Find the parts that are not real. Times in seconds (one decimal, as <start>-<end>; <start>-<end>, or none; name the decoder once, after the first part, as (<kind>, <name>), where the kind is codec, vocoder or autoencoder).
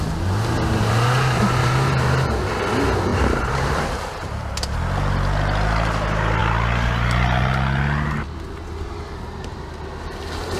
3.1-4.5 (vocoder, BigVGAN v2)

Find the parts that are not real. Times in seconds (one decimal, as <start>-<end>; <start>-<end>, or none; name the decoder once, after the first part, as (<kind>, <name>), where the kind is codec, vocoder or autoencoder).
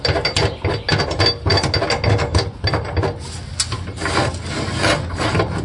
none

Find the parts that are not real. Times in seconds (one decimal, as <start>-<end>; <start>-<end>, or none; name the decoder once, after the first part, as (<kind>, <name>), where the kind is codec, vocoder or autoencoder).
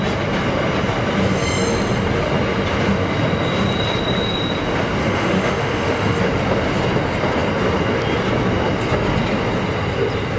5.0-6.2 (autoencoder, DAC-VAE)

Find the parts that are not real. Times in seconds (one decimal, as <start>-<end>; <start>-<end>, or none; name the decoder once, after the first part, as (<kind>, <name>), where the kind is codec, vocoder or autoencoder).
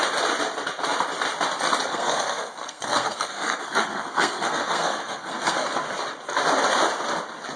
1.9-5.7 (codec, SNAC)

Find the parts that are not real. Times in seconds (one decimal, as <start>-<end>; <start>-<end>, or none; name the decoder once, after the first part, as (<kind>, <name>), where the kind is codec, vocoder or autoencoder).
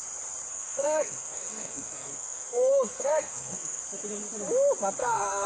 0.5-3.8 (codec, SNAC); 5.0-5.5